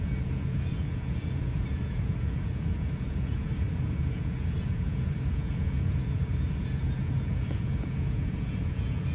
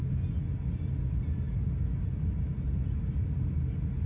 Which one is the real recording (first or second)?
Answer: second